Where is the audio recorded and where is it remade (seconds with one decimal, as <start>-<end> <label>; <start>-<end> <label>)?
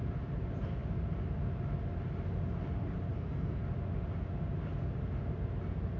0.0-3.1 recorded; 3.1-3.6 remade; 3.6-6.0 recorded